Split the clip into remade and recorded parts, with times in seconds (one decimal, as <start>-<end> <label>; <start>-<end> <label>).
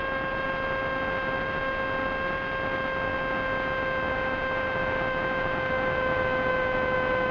0.0-7.3 recorded